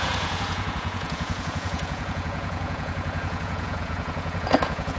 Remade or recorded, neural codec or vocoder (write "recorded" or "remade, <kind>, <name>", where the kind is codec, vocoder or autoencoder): remade, vocoder, Vocos